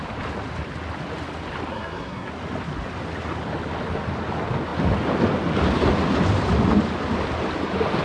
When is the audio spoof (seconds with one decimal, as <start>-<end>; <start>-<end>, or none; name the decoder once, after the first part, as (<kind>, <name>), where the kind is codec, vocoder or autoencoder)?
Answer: 1.7-2.3 (codec, SNAC)